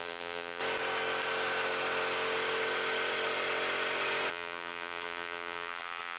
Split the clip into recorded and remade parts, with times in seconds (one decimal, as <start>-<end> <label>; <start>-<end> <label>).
0.0-0.6 remade; 0.6-4.3 recorded; 4.3-6.2 remade